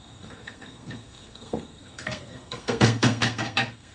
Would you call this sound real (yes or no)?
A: no